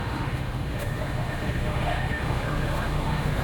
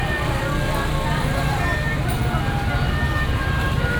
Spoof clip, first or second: first